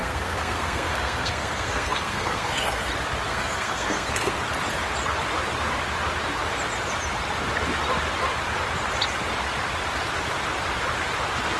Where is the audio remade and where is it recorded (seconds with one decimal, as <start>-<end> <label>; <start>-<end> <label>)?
0.0-2.9 remade; 2.9-3.3 recorded; 3.3-4.4 remade; 4.4-11.6 recorded